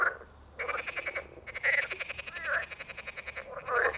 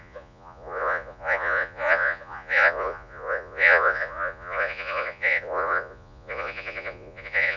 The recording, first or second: first